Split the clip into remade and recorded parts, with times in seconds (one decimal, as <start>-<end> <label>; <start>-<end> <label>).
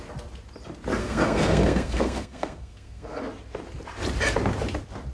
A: 0.0-1.0 recorded; 1.0-3.2 remade; 3.2-5.1 recorded